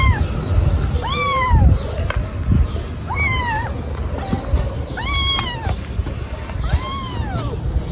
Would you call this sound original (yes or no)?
yes